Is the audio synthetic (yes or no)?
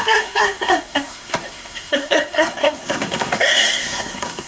yes